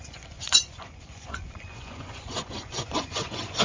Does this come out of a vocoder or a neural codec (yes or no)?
yes